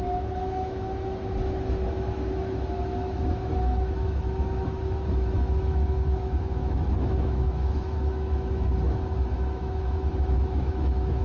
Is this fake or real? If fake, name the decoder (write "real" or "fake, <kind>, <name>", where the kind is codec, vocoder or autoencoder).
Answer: fake, autoencoder, DAC-VAE